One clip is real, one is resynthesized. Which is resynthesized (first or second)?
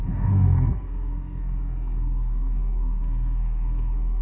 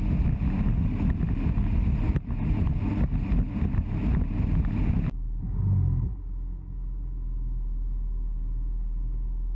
first